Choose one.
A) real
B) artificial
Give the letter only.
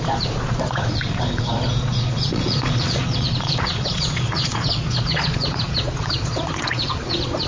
B